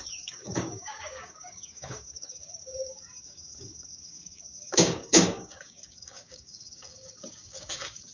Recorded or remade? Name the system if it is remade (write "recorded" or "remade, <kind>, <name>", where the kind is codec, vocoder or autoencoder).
remade, codec, DAC